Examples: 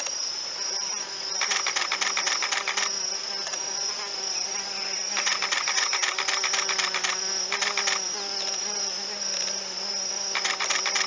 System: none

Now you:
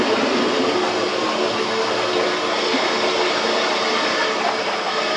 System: none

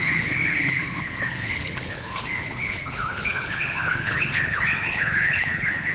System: codec, HILCodec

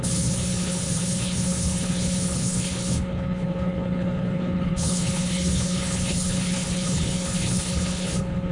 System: codec, HILCodec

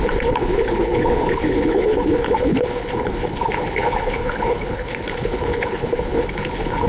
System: codec, HILCodec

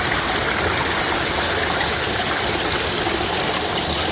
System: none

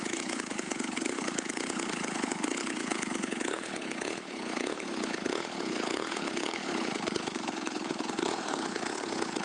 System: codec, HILCodec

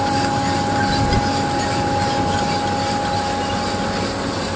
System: none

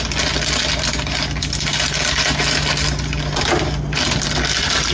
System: none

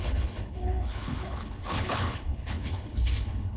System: codec, HILCodec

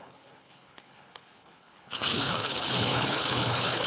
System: codec, HILCodec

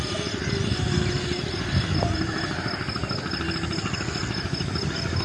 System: none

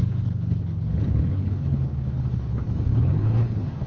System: codec, HILCodec